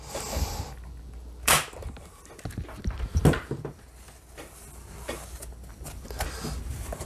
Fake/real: real